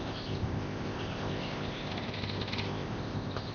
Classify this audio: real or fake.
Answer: fake